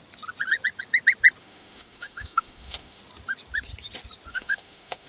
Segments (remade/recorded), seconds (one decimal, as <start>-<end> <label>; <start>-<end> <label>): 0.0-1.4 recorded; 1.4-3.0 remade; 3.0-4.3 recorded; 4.3-5.1 remade